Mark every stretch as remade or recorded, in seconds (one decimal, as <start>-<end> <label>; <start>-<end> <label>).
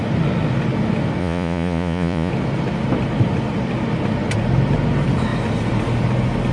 0.0-1.2 recorded; 1.2-2.3 remade; 2.3-6.5 recorded